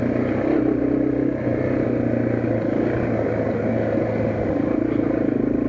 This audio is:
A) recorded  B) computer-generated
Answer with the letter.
A